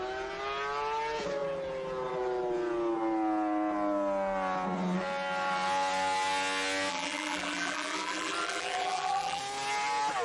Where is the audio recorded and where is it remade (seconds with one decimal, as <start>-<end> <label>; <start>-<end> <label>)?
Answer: 0.0-6.9 recorded; 6.9-9.4 remade; 9.4-10.2 recorded